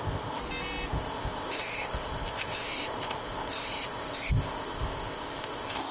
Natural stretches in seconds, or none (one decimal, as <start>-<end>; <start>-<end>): 0.4-0.9